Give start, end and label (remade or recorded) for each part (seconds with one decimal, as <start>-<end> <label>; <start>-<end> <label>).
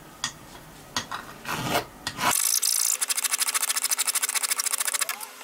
0.0-5.4 recorded